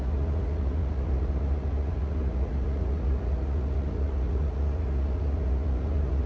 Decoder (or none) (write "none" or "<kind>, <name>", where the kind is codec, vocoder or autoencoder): vocoder, Vocos